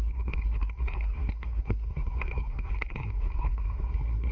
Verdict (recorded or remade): remade